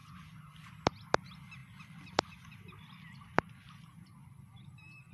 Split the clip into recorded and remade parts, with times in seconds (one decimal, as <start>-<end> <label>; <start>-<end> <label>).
0.0-5.1 recorded